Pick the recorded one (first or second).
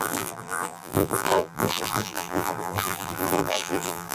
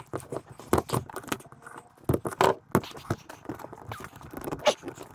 second